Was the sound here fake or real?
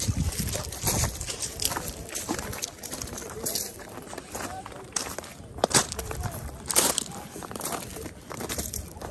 fake